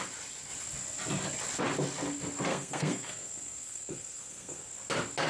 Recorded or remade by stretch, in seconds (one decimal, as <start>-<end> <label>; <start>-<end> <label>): 0.0-2.5 recorded; 2.5-4.7 remade; 4.7-5.3 recorded